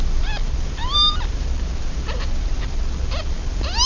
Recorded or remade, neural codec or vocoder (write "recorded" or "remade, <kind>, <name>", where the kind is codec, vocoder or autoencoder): remade, vocoder, BigVGAN v2